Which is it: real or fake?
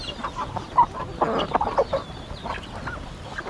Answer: real